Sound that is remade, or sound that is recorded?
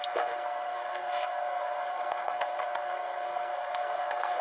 remade